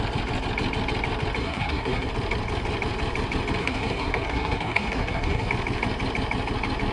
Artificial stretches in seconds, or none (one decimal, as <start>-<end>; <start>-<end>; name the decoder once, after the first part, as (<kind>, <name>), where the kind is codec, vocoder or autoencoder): 1.4-2.1 (codec, SNAC); 3.6-5.5